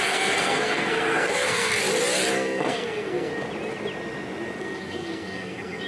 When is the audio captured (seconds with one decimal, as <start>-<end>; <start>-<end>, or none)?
1.7-2.3; 3.3-4.6